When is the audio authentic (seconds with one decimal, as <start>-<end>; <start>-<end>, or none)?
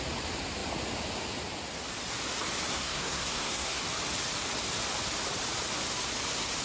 0.0-2.7; 3.8-6.6